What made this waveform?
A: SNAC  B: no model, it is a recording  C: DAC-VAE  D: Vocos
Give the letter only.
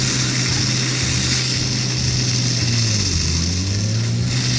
B